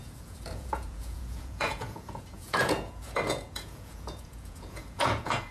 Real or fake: fake